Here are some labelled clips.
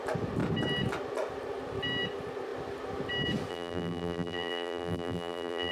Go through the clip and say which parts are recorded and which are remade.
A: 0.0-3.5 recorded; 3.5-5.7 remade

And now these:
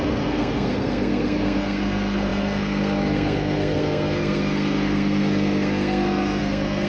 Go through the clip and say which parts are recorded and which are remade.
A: 0.0-6.9 remade

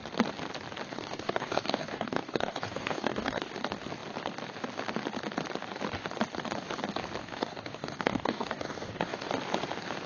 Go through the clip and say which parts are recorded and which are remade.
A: 0.0-0.9 recorded; 0.9-3.5 remade; 3.5-7.2 recorded; 7.2-9.3 remade; 9.3-10.1 recorded